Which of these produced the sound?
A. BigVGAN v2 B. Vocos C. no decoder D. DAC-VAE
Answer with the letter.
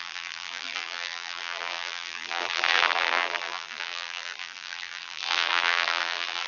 A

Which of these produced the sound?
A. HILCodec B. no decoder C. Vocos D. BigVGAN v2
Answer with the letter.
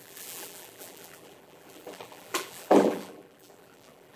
D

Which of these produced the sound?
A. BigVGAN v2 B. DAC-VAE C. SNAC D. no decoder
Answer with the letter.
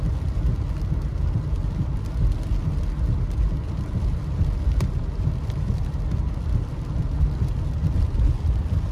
D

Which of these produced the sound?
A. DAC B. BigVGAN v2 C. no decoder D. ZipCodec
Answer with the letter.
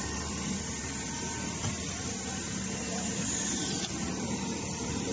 B